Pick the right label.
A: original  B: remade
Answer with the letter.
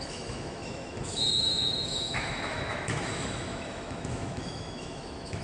B